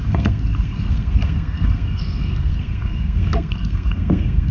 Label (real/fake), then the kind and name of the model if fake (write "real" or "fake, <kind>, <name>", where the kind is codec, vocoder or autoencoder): fake, codec, SNAC